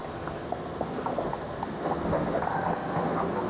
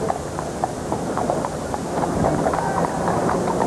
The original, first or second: second